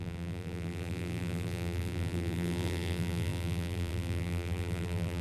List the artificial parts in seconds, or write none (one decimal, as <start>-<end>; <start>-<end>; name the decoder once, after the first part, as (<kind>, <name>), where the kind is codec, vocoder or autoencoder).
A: 0.0-5.2 (vocoder, BigVGAN v2)